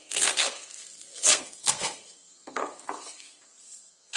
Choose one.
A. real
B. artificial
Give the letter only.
B